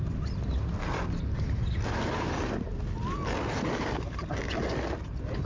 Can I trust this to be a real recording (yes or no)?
yes